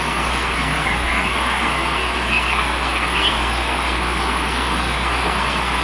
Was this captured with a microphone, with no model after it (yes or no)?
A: no